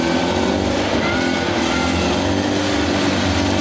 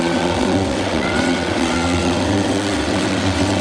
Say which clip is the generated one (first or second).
second